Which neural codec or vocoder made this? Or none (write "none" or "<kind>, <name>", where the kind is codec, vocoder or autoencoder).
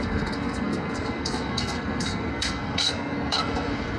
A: codec, SNAC